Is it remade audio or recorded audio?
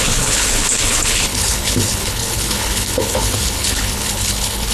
remade